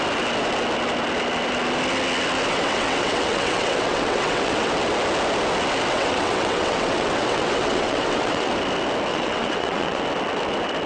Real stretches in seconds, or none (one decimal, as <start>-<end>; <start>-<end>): 0.0-2.5; 4.7-5.9; 8.5-9.1; 10.0-10.9